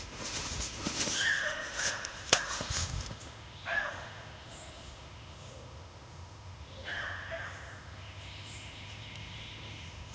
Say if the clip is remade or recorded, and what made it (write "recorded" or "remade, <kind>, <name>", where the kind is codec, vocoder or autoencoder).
remade, autoencoder, DAC-VAE